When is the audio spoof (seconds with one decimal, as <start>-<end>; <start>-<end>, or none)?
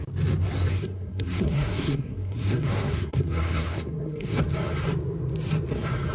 0.7-4.4